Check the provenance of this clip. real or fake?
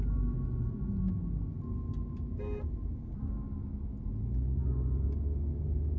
real